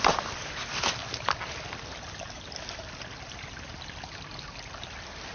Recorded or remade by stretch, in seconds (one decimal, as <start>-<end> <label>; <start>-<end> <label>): 0.0-5.3 recorded